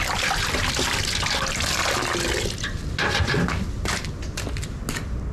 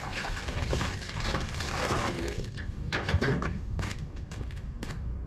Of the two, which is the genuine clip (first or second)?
first